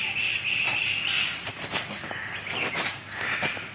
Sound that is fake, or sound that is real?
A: real